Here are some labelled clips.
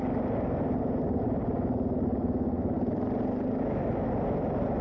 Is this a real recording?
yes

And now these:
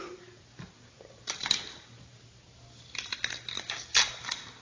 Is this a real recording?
yes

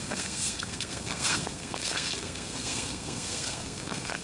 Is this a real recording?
no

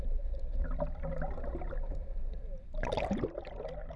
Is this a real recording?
yes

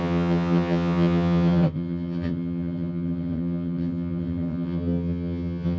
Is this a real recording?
no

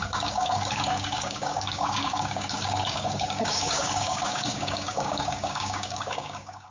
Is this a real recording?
no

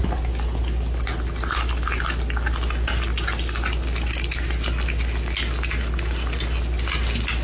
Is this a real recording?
yes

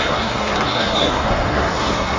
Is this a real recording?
no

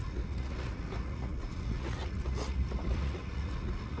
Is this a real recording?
no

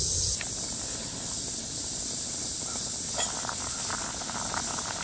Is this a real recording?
yes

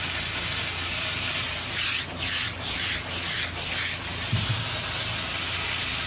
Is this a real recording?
yes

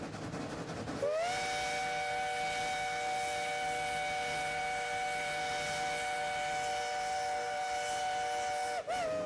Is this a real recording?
yes